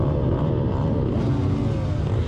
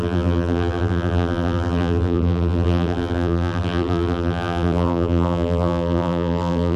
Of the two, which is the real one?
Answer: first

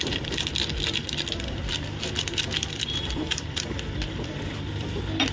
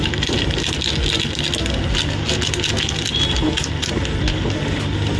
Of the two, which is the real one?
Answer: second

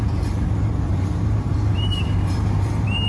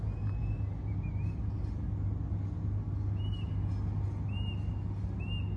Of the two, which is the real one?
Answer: second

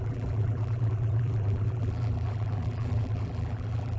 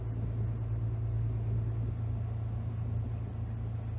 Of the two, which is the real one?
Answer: second